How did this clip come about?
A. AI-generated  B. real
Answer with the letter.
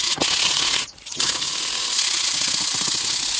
A